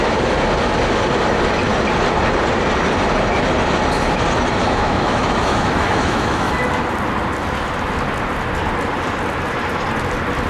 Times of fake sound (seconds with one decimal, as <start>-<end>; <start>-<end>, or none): 4.6-6.5